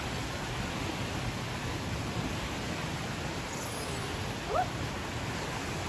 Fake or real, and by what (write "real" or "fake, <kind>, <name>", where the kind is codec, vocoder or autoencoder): real